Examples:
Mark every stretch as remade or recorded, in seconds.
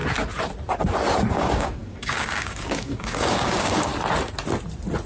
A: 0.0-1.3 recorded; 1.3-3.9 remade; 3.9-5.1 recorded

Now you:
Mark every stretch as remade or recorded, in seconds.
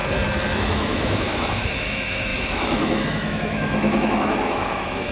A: 0.0-0.6 recorded; 0.6-5.1 remade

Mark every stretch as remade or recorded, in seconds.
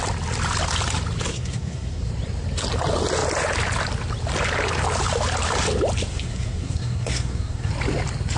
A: 0.0-1.3 recorded; 1.3-2.1 remade; 2.1-6.1 recorded; 6.1-7.7 remade; 7.7-8.4 recorded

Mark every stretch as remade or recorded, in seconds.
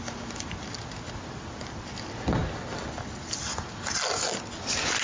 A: 0.0-5.0 recorded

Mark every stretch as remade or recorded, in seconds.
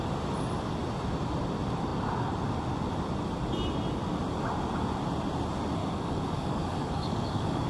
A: 0.0-5.8 recorded; 5.8-7.7 remade